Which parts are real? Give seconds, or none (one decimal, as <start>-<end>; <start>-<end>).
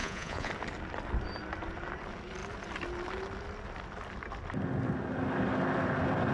0.5-6.3